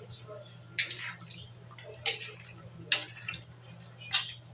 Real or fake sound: real